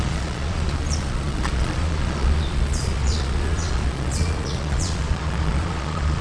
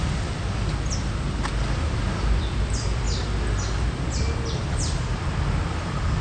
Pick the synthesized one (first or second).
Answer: first